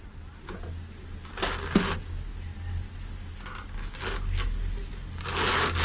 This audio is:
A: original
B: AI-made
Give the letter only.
A